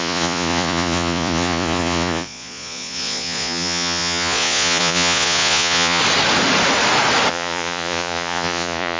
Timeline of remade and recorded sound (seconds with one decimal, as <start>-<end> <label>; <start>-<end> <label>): 0.0-6.0 remade; 6.0-7.3 recorded; 7.3-9.0 remade